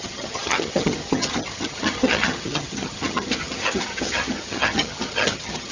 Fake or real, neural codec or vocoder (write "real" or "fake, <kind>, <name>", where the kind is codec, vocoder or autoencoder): fake, vocoder, HiFi-GAN